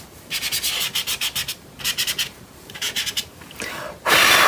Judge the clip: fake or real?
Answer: real